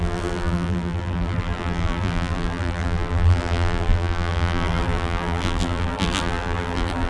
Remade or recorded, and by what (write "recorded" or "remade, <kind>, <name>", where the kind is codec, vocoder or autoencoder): remade, vocoder, BigVGAN v2